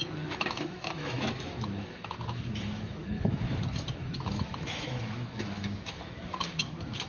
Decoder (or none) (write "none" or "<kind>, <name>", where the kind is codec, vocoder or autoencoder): autoencoder, DAC-VAE